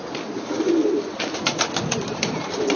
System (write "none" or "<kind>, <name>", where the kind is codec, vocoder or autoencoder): none